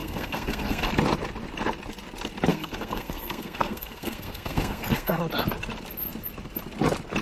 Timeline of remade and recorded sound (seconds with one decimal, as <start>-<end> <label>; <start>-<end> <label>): 0.0-0.9 remade; 0.9-2.5 recorded; 2.5-5.2 remade; 5.2-7.2 recorded